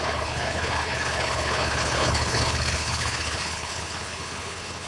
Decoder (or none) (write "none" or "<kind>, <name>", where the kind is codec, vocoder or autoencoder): codec, HILCodec